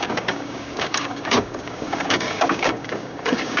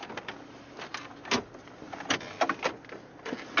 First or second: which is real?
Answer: second